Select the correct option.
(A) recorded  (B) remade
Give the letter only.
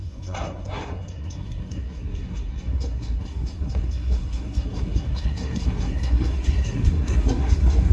B